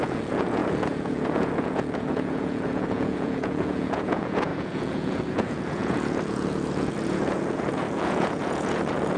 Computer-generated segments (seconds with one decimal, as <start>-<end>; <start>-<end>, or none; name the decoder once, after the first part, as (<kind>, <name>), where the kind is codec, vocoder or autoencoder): 0.0-9.2 (vocoder, Vocos)